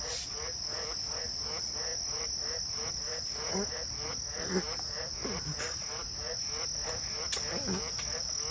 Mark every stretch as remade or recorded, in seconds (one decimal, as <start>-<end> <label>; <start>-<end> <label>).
0.0-1.9 recorded; 1.9-2.9 remade; 2.9-8.5 recorded